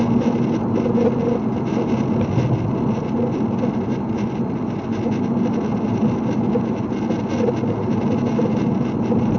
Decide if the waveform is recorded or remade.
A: recorded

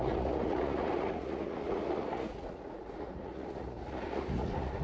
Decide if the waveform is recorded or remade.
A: remade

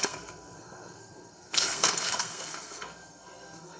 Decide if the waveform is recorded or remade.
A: remade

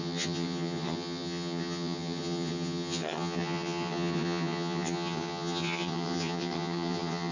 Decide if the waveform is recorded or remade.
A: remade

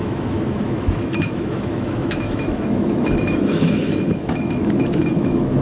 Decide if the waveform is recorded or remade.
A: remade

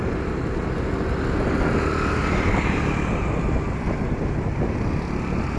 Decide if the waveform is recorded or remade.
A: recorded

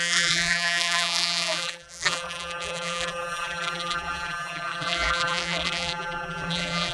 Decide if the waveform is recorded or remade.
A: remade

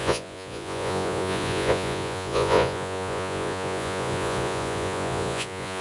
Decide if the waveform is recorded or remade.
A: remade